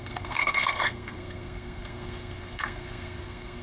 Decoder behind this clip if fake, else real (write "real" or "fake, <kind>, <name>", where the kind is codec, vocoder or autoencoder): fake, codec, SNAC